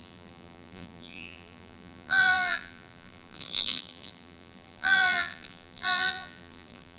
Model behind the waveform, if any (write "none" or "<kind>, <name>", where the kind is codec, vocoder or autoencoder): vocoder, BigVGAN v2